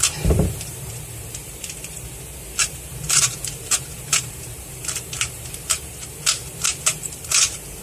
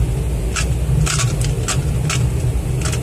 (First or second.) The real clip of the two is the second